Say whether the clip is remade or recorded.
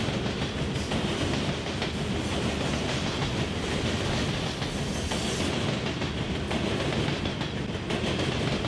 recorded